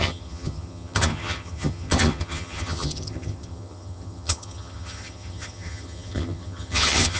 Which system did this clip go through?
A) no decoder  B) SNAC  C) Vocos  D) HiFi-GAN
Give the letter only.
D